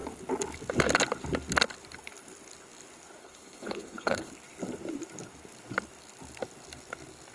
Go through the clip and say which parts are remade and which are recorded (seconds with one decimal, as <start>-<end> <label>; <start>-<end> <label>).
0.0-3.2 recorded; 3.2-4.3 remade; 4.3-7.3 recorded